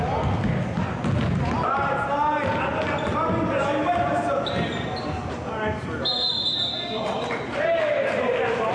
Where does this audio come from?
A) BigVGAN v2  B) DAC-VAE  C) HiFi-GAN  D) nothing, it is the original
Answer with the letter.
D